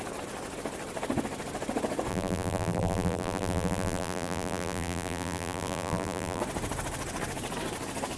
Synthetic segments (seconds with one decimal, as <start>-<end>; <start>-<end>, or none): 2.1-6.4